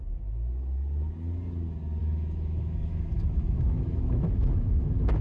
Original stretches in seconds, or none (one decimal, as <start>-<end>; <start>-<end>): 0.0-2.0